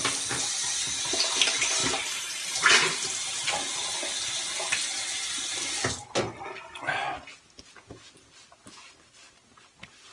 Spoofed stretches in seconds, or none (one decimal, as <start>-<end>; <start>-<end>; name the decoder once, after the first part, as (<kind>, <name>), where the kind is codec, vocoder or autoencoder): none